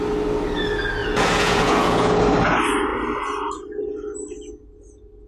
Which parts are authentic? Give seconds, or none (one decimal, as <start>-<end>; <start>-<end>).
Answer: 0.0-1.0; 2.2-5.3